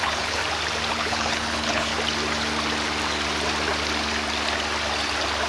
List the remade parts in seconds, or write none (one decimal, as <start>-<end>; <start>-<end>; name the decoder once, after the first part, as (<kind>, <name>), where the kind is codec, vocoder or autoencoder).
0.0-0.4 (codec, HILCodec); 0.9-1.9